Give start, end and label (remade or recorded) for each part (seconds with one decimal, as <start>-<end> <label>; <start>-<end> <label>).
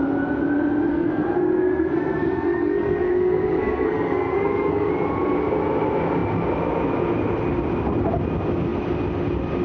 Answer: 0.0-0.9 recorded; 0.9-4.9 remade; 4.9-9.6 recorded